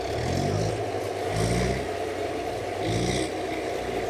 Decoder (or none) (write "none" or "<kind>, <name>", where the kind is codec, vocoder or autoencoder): none